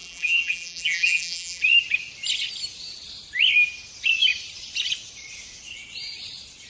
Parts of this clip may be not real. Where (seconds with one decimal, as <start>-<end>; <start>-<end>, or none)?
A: 0.0-1.6